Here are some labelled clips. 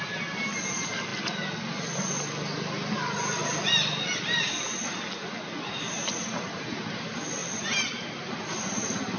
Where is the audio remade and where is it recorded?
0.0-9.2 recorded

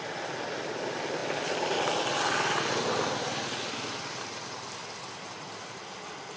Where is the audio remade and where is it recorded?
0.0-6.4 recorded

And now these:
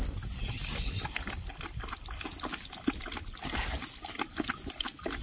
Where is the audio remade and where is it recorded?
0.0-5.2 recorded